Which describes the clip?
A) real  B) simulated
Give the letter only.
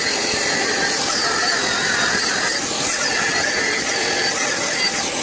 A